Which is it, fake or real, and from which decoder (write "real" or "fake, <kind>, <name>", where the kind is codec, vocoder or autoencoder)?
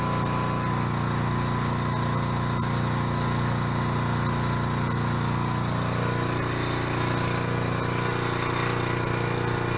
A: real